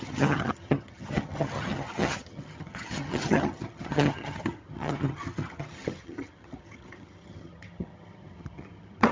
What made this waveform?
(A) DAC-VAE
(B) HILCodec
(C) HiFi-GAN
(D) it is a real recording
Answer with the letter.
C